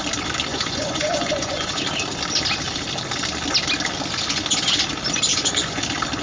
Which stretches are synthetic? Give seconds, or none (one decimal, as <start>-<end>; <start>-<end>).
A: 0.5-1.8; 5.3-5.8